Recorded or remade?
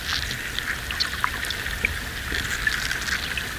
recorded